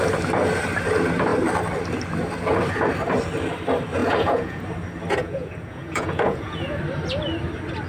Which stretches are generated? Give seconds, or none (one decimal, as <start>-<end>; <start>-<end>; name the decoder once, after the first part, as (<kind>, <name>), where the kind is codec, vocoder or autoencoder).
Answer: 4.0-4.6 (vocoder, Vocos); 5.2-6.8